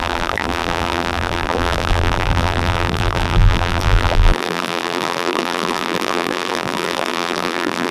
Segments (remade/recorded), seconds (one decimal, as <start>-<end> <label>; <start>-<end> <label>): 0.0-7.9 remade